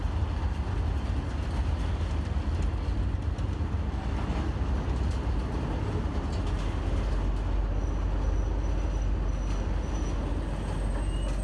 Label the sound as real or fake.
real